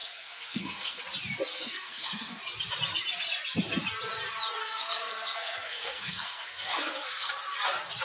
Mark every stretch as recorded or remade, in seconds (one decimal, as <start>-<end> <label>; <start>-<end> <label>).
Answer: 0.0-1.0 remade; 1.0-1.5 recorded; 1.5-2.4 remade; 2.4-4.6 recorded; 4.6-7.3 remade; 7.3-8.0 recorded